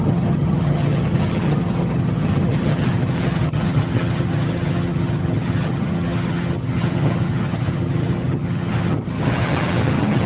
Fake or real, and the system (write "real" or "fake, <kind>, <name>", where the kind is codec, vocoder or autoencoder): fake, vocoder, HiFi-GAN